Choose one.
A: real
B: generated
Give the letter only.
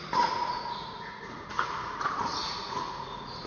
B